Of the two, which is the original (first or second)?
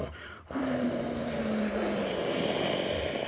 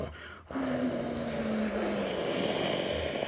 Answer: second